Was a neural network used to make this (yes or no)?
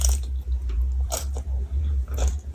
yes